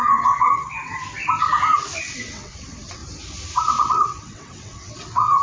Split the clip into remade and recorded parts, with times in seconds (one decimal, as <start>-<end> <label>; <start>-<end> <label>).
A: 0.0-0.9 remade; 0.9-2.0 recorded; 2.0-3.0 remade; 3.0-3.6 recorded; 3.6-5.4 remade

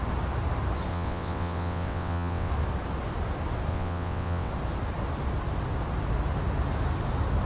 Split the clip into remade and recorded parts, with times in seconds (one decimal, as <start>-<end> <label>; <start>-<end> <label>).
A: 0.0-0.9 recorded; 0.9-2.5 remade; 2.5-3.7 recorded; 3.7-4.5 remade; 4.5-7.5 recorded

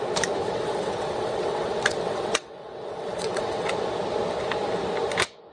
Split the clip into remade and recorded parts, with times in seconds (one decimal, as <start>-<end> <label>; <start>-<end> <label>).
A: 0.0-0.4 recorded; 0.4-3.7 remade; 3.7-5.5 recorded

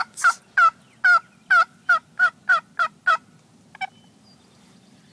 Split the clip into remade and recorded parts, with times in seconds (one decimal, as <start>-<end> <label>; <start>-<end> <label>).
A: 0.0-5.1 recorded

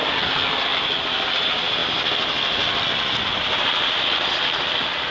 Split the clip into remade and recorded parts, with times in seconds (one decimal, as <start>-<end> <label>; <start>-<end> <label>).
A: 0.0-5.1 recorded

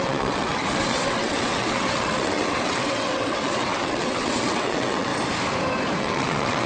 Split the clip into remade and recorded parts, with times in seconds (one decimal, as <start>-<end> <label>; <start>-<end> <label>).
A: 0.0-5.1 remade; 5.1-6.0 recorded; 6.0-6.7 remade